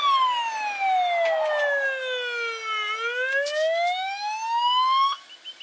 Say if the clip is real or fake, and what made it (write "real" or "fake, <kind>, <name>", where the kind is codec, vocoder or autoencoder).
real